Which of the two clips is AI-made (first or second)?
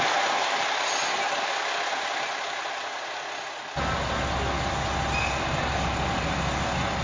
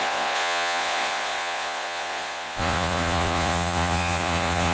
second